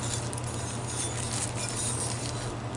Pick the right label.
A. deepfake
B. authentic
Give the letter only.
B